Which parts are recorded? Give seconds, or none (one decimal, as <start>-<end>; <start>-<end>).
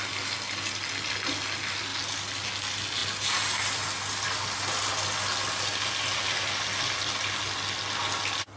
0.0-8.6